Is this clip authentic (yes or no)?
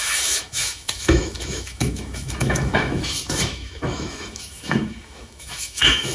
no